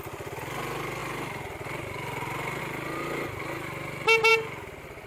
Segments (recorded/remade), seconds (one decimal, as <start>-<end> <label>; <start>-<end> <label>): 0.0-5.1 recorded